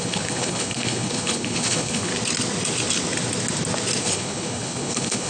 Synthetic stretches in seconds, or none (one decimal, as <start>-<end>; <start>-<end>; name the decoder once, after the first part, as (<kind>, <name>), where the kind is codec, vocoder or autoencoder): 0.0-2.1 (codec, HILCodec); 4.0-5.3